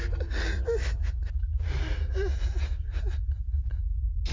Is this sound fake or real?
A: real